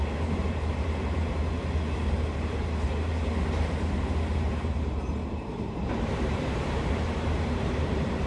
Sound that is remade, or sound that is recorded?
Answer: remade